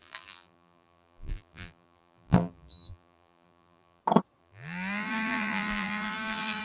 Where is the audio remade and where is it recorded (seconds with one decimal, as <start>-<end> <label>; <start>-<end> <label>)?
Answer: 0.0-4.0 remade; 4.0-4.4 recorded; 4.4-6.6 remade